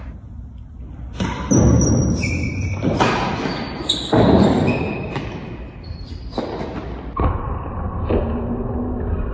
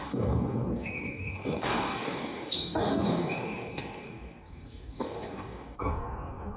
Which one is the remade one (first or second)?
second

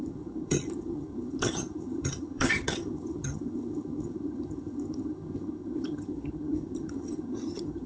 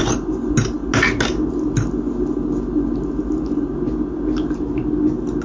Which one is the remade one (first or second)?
first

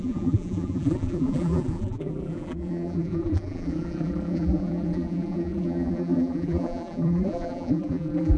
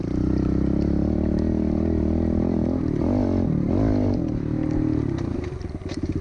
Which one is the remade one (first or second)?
first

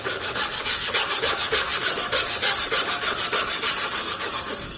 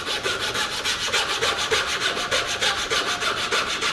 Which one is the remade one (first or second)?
first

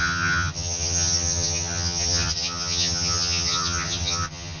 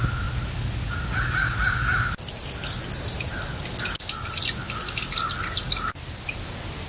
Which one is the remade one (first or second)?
first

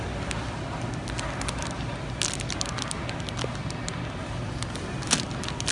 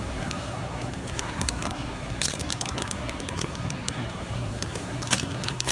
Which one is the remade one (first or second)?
second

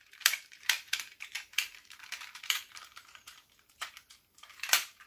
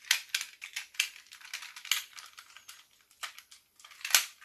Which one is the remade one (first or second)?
first